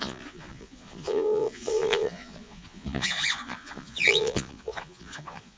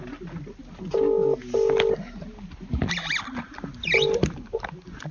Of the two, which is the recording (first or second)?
second